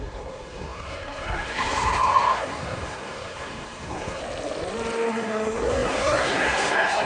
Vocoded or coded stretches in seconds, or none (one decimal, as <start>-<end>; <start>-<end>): 0.0-4.2; 5.1-7.1